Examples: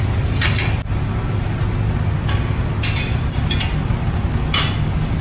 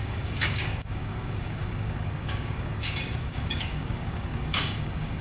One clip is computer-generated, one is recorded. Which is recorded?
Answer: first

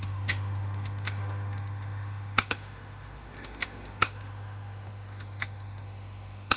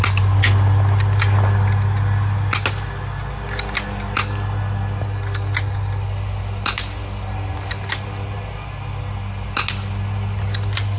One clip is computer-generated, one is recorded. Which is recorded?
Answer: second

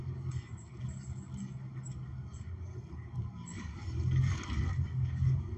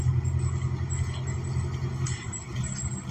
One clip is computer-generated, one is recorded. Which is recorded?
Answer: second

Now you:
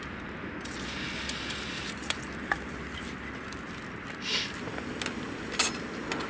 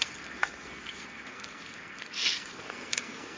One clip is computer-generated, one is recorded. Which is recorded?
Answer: first